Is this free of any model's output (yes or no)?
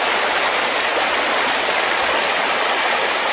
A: yes